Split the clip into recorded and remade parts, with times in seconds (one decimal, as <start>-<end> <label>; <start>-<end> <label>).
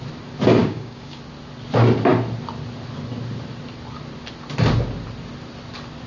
0.0-0.6 recorded; 0.6-1.2 remade; 1.2-6.1 recorded